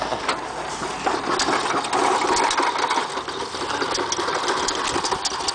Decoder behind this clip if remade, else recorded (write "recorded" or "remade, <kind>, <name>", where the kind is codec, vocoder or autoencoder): recorded